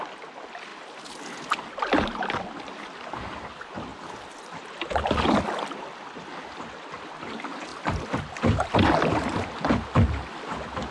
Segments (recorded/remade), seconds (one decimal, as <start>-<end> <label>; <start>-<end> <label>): 0.0-3.9 recorded; 3.9-6.3 remade; 6.3-7.7 recorded; 7.7-8.4 remade; 8.4-10.9 recorded